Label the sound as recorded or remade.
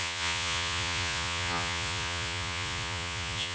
remade